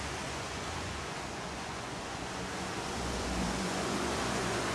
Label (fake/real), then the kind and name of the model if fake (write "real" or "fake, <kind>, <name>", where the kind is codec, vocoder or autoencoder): fake, vocoder, Vocos